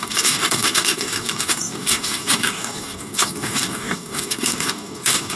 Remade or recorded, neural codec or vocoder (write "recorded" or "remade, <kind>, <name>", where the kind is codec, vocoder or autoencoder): remade, codec, DAC